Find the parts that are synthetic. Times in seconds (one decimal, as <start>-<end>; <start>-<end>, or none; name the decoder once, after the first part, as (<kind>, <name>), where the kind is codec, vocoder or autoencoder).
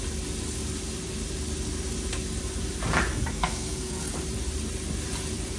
3.1-4.1 (codec, SNAC)